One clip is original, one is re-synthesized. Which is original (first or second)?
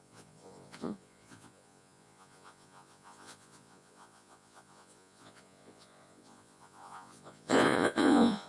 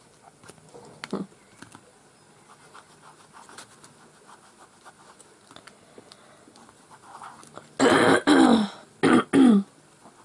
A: second